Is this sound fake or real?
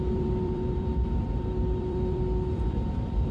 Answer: fake